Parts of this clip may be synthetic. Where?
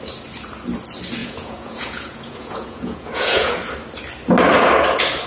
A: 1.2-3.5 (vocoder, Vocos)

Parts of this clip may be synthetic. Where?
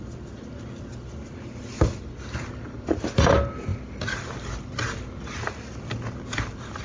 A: none